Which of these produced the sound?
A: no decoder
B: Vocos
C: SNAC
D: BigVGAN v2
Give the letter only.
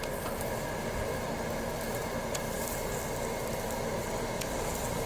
A